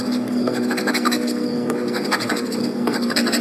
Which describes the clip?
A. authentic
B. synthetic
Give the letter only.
B